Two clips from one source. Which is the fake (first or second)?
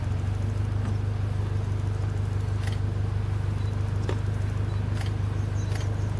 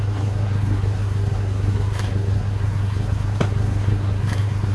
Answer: second